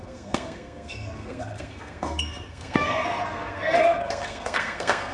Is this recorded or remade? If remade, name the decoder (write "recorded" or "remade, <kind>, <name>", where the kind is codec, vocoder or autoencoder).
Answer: remade, codec, SNAC